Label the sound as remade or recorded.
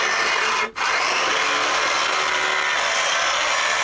recorded